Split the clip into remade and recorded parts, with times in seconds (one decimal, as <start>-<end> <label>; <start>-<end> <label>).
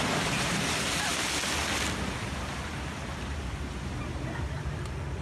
0.0-5.2 recorded